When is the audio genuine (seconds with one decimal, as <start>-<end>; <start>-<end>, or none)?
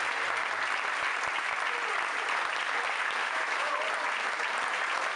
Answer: 0.0-3.2; 3.7-5.2